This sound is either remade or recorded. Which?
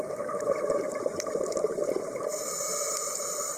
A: remade